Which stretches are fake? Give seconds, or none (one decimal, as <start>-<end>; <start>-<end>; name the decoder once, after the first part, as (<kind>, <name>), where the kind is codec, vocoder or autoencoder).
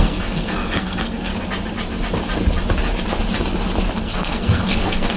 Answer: 0.0-1.3 (codec, SNAC); 4.0-5.2